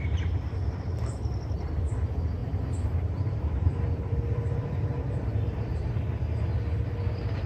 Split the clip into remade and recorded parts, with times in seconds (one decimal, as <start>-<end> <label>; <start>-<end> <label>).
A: 0.0-2.4 recorded; 2.4-5.9 remade; 5.9-7.5 recorded